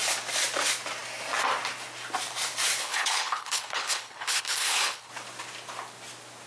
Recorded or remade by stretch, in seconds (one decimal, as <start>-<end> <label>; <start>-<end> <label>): 0.0-2.8 recorded; 2.8-5.1 remade; 5.1-6.5 recorded